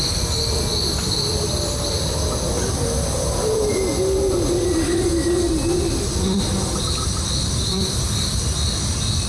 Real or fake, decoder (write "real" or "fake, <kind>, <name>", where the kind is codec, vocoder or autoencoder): real